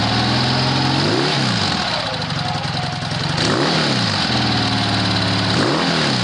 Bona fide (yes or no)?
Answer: yes